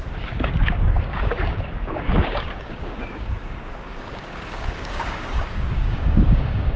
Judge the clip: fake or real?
fake